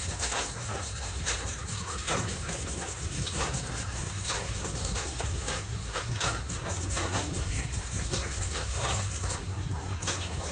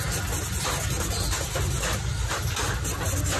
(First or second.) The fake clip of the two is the first